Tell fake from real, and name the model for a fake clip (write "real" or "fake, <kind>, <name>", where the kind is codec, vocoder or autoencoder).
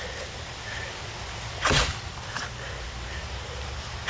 real